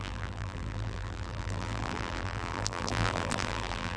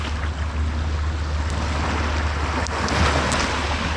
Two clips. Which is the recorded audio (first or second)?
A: second